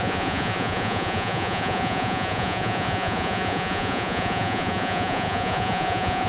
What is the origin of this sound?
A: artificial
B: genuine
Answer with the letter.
A